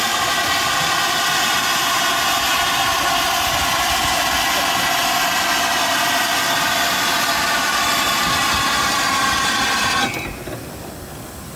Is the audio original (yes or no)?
yes